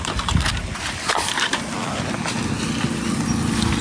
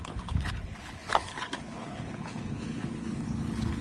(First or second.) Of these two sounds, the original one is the first